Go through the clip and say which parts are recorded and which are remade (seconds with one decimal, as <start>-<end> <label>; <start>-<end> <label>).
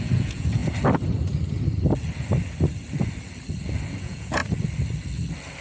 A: 0.0-0.6 remade; 0.6-4.0 recorded; 4.0-4.4 remade; 4.4-5.6 recorded